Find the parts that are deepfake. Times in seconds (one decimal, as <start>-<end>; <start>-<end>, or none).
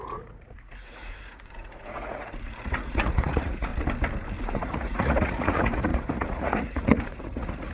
0.0-3.7; 4.4-7.7